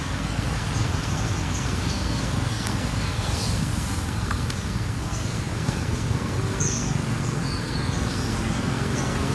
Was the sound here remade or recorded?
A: remade